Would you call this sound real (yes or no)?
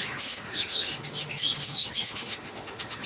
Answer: no